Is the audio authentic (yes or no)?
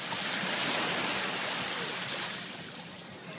yes